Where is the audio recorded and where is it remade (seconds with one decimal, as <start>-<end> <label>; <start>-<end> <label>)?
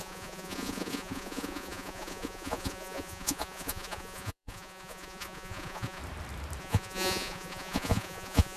0.0-6.0 remade; 6.0-6.6 recorded; 6.6-8.6 remade